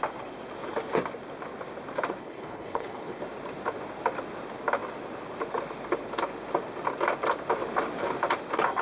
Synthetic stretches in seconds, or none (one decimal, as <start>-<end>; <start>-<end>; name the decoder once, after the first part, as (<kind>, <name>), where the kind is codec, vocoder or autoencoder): 2.2-3.2 (codec, HILCodec)